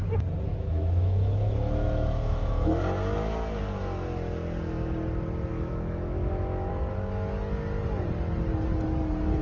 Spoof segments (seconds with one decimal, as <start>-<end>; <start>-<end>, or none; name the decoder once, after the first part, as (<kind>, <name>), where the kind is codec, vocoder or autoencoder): 0.5-2.8 (autoencoder, DAC-VAE); 5.5-6.7